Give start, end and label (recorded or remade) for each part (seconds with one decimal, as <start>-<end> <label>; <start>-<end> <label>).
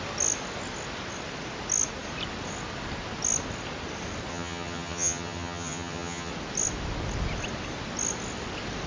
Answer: 0.0-4.3 recorded; 4.3-6.3 remade; 6.3-8.9 recorded